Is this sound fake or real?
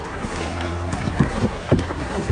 fake